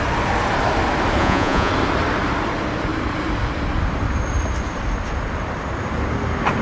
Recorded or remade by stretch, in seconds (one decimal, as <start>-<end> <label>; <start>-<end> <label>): 0.0-1.2 recorded; 1.2-1.7 remade; 1.7-6.6 recorded